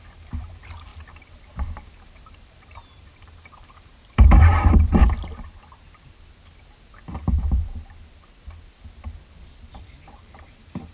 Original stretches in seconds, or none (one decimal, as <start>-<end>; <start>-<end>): 0.9-2.0; 5.0-9.7